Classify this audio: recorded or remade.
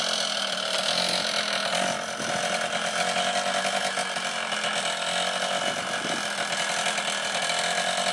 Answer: recorded